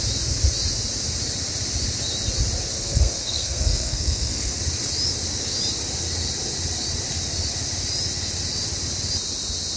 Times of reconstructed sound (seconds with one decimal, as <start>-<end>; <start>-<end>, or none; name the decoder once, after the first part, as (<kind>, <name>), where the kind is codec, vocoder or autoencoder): 2.8-4.6 (codec, SNAC)